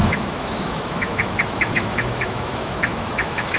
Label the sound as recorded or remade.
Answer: remade